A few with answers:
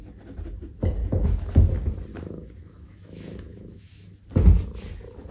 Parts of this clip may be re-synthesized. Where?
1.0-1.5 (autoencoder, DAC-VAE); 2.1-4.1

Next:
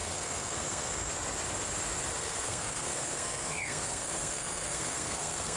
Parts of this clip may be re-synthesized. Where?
0.0-1.1 (codec, SNAC); 2.2-5.6